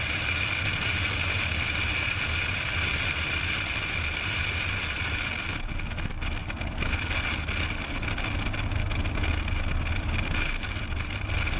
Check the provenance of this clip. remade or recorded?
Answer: recorded